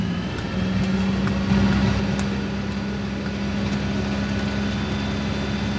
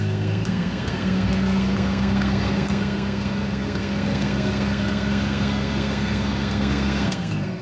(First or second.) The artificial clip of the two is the second